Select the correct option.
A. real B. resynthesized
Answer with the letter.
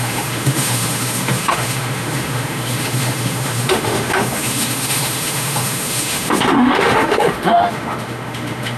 B